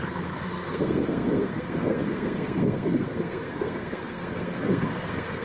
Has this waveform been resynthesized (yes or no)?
yes